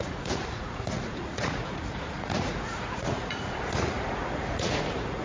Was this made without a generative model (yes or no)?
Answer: no